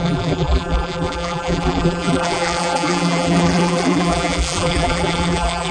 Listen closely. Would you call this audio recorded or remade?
remade